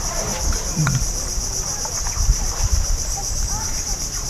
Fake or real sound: fake